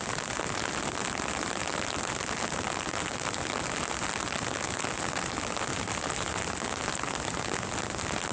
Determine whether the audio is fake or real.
real